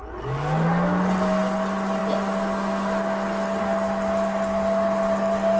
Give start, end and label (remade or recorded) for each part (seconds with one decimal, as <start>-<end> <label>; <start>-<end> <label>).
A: 0.0-5.6 recorded